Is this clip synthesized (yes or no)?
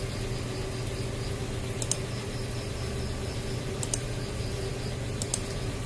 no